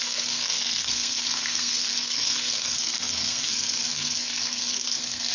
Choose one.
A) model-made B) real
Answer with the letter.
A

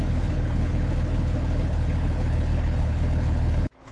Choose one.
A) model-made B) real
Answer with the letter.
A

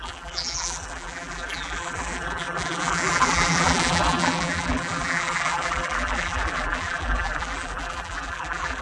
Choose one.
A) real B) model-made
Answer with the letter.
B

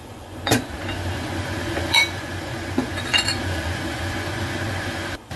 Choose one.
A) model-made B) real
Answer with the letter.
A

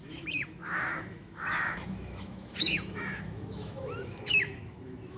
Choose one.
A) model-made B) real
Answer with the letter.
A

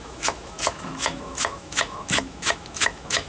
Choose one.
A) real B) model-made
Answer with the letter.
B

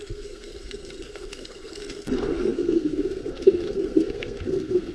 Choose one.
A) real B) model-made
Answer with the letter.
B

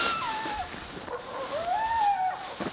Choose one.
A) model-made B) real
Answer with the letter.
B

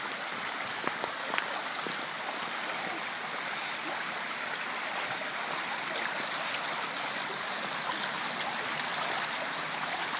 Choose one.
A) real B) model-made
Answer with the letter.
A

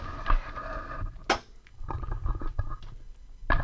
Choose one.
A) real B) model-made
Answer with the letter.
A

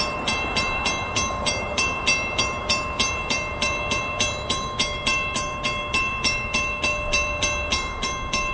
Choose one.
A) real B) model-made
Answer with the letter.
B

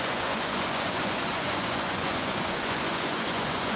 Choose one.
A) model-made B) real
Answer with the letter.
A